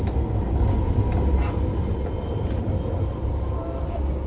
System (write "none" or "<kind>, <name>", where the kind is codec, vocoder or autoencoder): none